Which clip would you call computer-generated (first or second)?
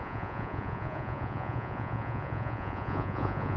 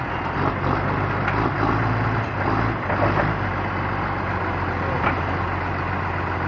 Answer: first